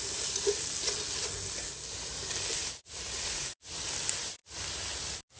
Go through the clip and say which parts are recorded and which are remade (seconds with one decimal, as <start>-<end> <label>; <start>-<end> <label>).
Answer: 0.0-2.6 recorded; 2.6-3.8 remade; 3.8-5.4 recorded